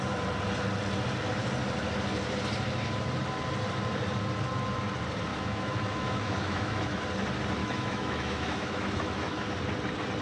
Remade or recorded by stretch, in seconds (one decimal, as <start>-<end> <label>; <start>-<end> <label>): 0.0-5.3 recorded; 5.3-7.0 remade; 7.0-7.6 recorded; 7.6-9.5 remade; 9.5-10.2 recorded